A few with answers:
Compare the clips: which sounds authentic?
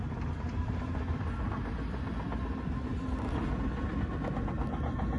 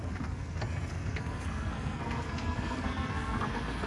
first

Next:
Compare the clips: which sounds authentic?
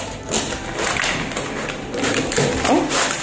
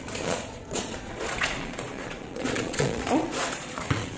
first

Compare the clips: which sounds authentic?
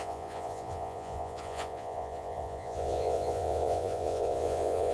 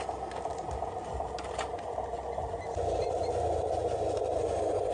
second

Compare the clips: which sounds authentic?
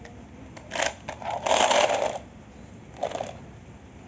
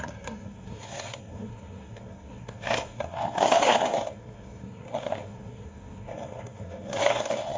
first